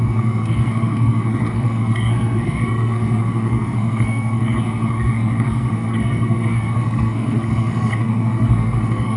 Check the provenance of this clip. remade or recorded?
remade